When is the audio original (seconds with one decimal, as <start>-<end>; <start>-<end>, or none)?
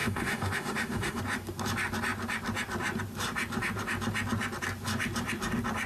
1.2-5.9